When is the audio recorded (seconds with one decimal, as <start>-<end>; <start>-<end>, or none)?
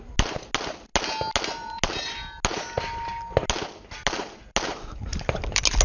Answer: 0.0-5.8